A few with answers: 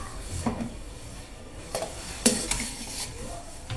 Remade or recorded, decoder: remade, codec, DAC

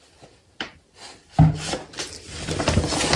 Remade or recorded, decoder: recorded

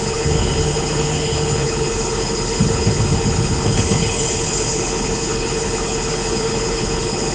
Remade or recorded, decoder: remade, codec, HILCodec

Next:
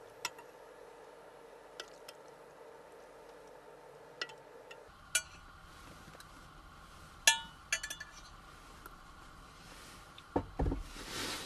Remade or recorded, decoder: recorded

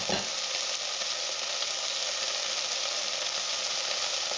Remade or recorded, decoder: recorded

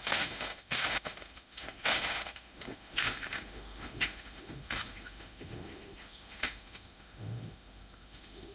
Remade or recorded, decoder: remade, autoencoder, DAC-VAE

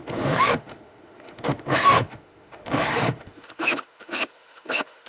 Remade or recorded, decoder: remade, autoencoder, DAC-VAE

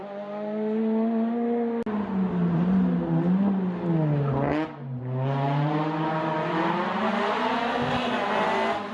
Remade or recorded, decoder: recorded